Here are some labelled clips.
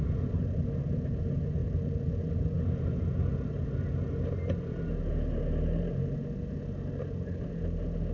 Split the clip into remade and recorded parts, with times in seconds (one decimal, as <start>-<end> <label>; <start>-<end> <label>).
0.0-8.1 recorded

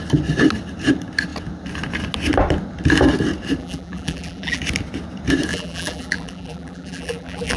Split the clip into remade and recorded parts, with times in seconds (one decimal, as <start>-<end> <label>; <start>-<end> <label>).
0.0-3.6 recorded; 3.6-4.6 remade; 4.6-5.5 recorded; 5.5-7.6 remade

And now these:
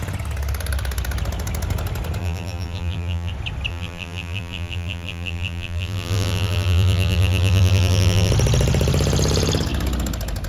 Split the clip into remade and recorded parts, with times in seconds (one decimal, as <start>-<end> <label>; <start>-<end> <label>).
0.0-2.2 recorded; 2.2-3.3 remade; 3.3-3.7 recorded; 3.7-8.3 remade; 8.3-10.5 recorded

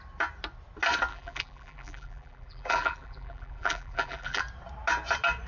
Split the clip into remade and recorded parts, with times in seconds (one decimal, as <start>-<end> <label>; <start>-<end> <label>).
0.0-1.1 recorded; 1.1-4.4 remade; 4.4-5.5 recorded

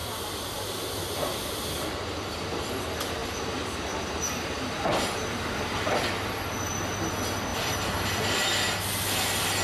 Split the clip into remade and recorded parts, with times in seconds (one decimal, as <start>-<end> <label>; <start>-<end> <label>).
0.0-2.8 remade; 2.8-7.5 recorded; 7.5-8.9 remade; 8.9-9.6 recorded

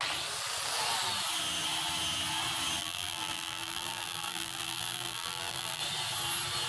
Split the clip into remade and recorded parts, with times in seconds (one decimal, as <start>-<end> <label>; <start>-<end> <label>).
0.0-2.8 recorded; 2.8-5.8 remade; 5.8-6.7 recorded

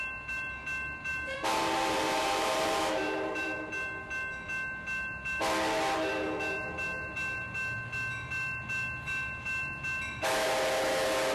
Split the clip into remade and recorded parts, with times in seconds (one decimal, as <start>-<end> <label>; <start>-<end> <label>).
0.0-1.1 recorded; 1.1-3.7 remade; 3.7-11.3 recorded